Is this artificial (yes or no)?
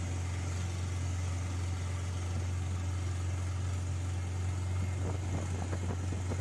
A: no